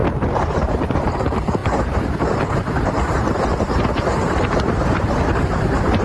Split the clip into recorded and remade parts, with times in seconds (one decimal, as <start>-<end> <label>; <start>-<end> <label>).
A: 0.0-6.0 remade